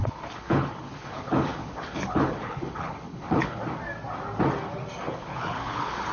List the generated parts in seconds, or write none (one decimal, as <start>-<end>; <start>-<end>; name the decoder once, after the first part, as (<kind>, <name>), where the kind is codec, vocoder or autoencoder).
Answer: 0.0-3.6 (codec, HILCodec); 5.1-6.1